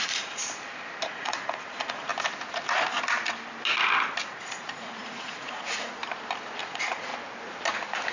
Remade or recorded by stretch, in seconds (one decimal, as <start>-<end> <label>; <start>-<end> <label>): 0.0-0.4 remade; 0.4-1.1 recorded; 1.1-2.1 remade; 2.1-4.3 recorded; 4.3-6.0 remade; 6.0-6.6 recorded; 6.6-7.1 remade; 7.1-8.1 recorded